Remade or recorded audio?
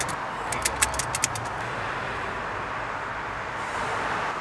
recorded